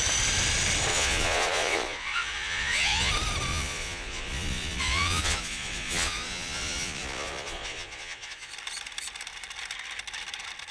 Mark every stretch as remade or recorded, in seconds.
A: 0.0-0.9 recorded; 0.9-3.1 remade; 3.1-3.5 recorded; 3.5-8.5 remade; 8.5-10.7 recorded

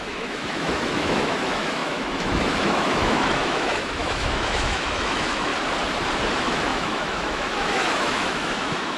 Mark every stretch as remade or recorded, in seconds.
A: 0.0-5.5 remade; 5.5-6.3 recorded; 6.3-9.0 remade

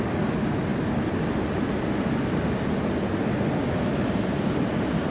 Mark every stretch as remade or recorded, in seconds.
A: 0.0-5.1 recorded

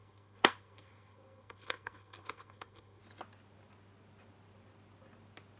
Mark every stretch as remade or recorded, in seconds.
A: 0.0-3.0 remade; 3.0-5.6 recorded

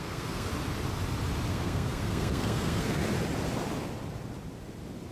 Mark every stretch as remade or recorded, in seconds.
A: 0.0-0.5 remade; 0.5-1.5 recorded; 1.5-3.0 remade; 3.0-5.1 recorded

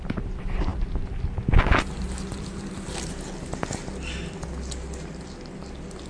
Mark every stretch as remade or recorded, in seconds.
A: 0.0-6.1 recorded